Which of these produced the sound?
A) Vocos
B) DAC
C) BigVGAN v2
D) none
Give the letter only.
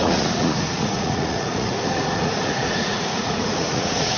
A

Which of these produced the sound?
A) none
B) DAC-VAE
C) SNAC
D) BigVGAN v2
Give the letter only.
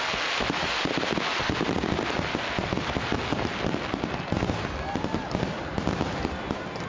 A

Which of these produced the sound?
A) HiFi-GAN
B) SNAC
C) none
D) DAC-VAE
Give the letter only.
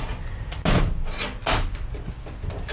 C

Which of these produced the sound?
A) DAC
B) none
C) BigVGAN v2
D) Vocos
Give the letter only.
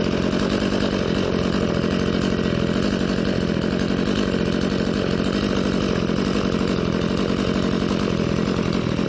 B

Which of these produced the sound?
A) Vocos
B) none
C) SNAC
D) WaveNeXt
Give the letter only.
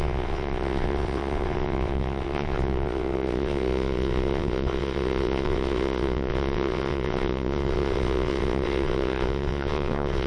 D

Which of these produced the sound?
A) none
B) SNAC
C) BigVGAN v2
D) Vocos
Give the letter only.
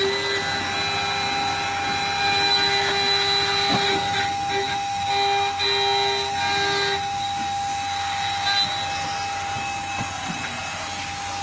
A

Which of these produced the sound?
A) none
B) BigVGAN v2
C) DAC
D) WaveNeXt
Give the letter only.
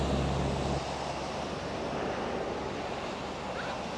A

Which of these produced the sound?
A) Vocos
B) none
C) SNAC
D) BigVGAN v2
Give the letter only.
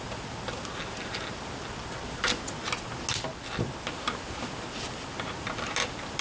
B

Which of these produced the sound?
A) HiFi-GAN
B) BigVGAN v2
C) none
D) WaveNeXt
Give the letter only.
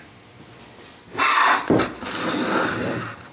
C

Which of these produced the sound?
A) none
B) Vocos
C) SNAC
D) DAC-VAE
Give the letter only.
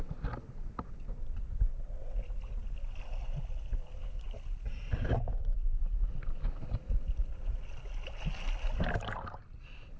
A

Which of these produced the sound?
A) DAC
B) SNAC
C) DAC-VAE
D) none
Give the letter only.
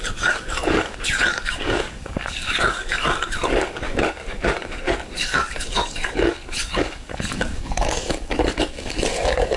A